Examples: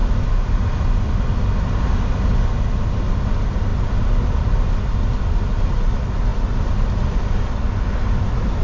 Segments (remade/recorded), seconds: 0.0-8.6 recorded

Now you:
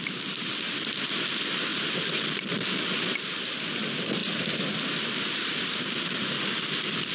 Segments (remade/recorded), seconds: 0.0-7.1 recorded

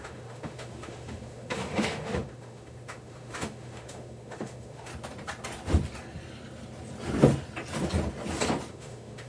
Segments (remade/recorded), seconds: 0.0-4.9 remade; 4.9-8.7 recorded; 8.7-9.3 remade

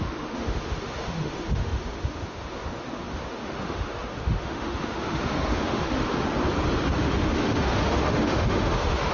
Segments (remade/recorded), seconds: 0.0-6.3 remade; 6.3-7.0 recorded; 7.0-9.1 remade

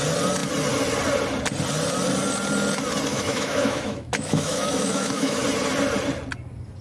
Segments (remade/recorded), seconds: 0.0-3.1 recorded; 3.1-5.4 remade; 5.4-6.8 recorded

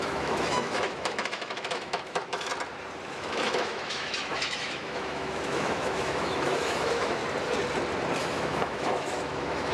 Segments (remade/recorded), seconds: 0.0-2.5 remade; 2.5-3.1 recorded; 3.1-7.2 remade; 7.2-8.2 recorded; 8.2-9.7 remade